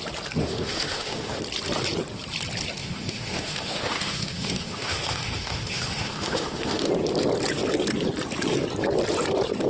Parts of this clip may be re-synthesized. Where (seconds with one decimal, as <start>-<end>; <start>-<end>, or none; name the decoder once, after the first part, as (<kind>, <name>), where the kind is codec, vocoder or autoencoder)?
0.4-1.4 (autoencoder, DAC-VAE); 2.8-6.9